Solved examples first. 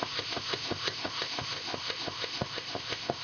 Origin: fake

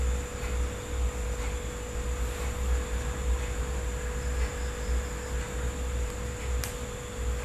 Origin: real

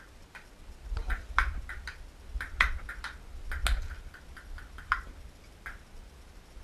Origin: real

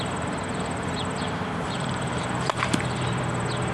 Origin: fake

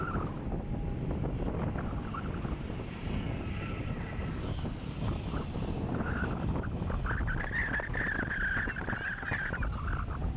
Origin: real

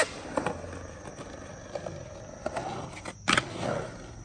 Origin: real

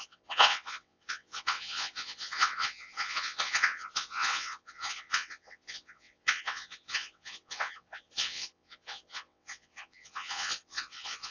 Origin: fake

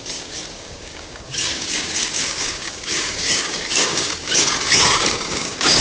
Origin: fake